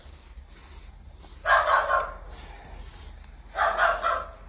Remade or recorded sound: recorded